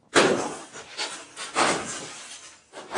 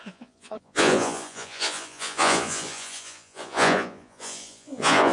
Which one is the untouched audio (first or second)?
first